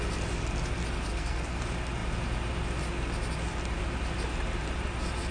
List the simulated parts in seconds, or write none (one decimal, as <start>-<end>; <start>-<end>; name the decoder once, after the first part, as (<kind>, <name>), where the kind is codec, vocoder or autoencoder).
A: 1.1-1.6 (codec, SNAC)